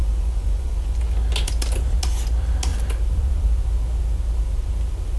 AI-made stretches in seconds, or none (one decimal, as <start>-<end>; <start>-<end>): 0.0-1.0